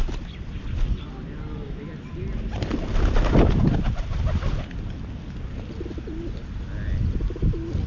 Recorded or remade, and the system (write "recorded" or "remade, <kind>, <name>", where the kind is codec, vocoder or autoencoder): recorded